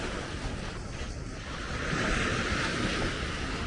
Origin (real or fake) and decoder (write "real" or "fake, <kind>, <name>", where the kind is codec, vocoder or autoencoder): fake, vocoder, BigVGAN v2